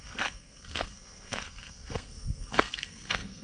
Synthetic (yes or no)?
yes